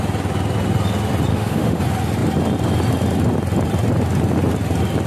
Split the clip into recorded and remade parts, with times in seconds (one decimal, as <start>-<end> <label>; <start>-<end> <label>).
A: 0.0-1.3 recorded; 1.3-1.8 remade; 1.8-5.1 recorded